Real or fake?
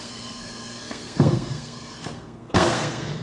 fake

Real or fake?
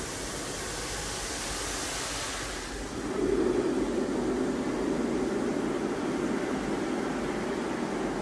real